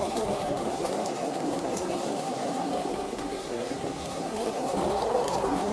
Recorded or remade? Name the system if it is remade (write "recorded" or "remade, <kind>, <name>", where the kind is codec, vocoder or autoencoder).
remade, codec, SNAC